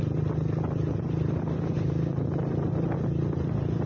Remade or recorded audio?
recorded